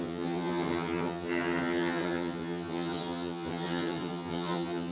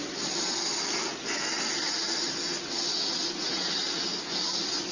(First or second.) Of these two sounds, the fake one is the first